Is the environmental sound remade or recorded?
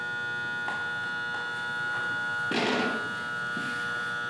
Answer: recorded